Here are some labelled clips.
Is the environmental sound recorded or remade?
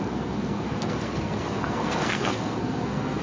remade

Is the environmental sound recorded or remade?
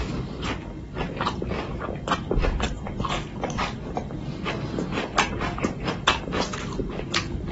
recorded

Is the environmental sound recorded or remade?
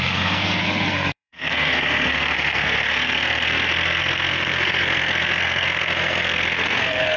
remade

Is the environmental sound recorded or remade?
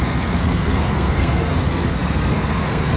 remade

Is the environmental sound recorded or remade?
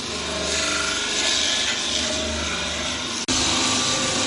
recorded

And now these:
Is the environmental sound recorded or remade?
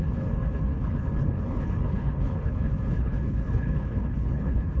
remade